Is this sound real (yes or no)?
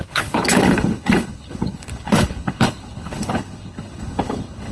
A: no